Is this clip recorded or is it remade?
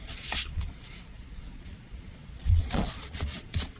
remade